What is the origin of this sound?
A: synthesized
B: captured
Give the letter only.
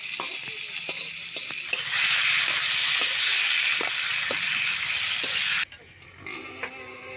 B